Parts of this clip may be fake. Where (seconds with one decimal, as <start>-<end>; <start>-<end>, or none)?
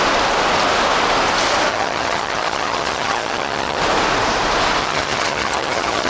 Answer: 1.7-3.8; 4.8-6.1